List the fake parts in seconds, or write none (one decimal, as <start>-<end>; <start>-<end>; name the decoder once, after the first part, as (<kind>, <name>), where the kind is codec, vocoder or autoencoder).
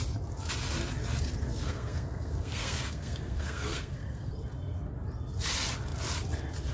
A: 1.5-4.3 (codec, SNAC)